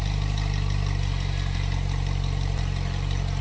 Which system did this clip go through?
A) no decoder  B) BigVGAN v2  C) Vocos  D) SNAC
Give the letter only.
A